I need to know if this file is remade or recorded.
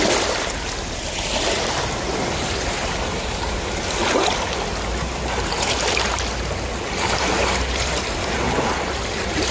recorded